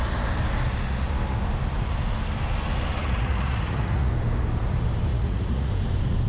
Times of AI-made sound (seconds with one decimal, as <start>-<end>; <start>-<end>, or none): 3.0-4.1; 5.1-5.7